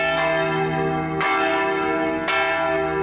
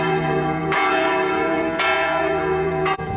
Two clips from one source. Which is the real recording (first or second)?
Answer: first